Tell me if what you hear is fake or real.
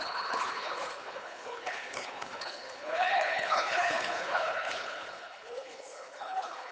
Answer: fake